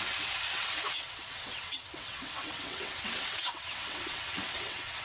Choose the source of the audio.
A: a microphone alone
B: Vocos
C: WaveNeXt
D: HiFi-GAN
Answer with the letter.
C